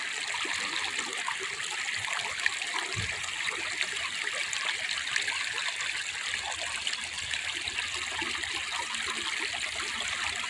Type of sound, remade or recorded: recorded